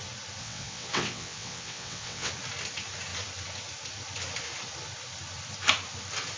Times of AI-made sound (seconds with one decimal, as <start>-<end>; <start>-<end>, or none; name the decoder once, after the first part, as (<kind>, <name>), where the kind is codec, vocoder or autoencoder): 0.4-2.3 (vocoder, WaveNeXt)

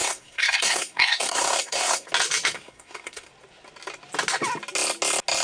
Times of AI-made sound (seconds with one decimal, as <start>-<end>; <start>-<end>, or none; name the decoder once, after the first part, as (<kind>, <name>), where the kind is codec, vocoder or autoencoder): 0.0-2.1 (codec, SNAC); 2.5-3.3

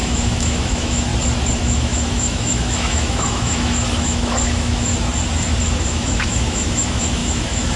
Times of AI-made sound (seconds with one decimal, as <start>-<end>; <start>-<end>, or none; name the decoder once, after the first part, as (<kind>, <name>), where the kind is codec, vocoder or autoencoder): 0.0-1.1 (autoencoder, DAC-VAE); 1.6-4.9; 5.6-7.8

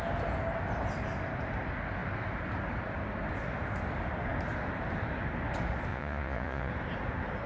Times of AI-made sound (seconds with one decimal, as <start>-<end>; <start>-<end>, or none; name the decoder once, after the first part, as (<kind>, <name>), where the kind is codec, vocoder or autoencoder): 5.9-6.7 (vocoder, Vocos)

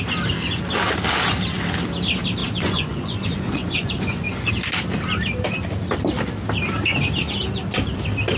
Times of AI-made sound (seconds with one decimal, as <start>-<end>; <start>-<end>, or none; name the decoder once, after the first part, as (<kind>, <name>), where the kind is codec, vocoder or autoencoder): 2.4-4.5 (vocoder, Vocos)